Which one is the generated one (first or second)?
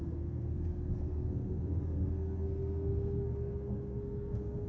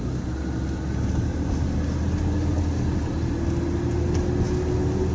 first